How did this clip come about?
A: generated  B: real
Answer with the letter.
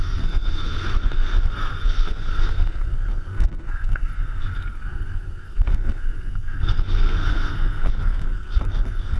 A